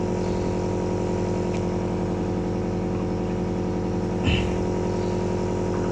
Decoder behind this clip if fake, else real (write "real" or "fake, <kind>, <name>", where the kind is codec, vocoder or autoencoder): real